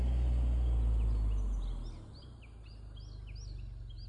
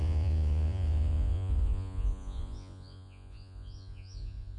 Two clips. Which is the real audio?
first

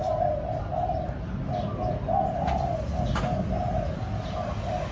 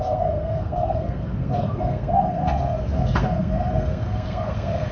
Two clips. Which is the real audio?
first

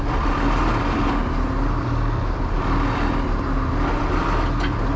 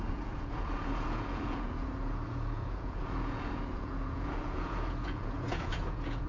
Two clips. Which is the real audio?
first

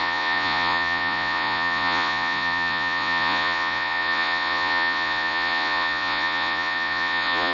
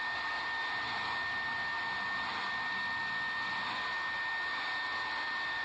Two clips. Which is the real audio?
second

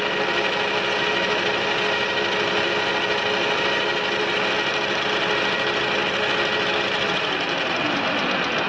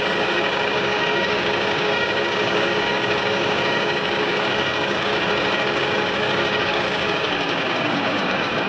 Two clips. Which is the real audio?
first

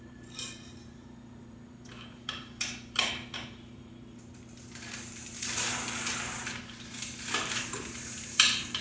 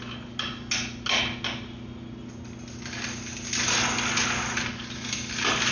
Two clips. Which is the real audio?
second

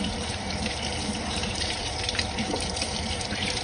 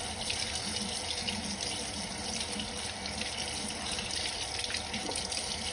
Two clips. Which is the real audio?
second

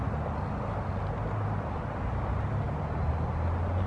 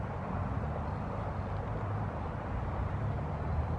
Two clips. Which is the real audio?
first